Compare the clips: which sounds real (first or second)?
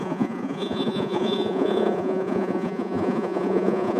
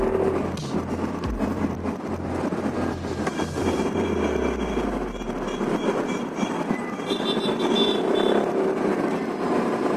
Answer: second